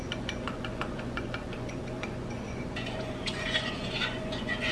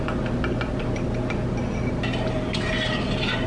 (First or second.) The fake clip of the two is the first